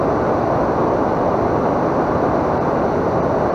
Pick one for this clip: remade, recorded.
recorded